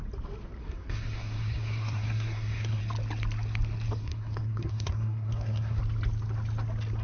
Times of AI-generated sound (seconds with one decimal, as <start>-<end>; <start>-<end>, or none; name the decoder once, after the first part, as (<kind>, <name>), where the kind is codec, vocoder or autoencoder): 0.6-2.8 (codec, SNAC); 4.0-5.8